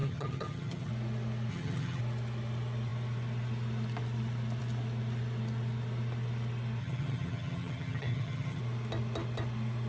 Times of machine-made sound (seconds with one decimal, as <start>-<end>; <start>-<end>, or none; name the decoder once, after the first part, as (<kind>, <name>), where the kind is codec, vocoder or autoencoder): 0.0-0.9 (vocoder, HiFi-GAN); 1.5-2.0; 6.8-8.6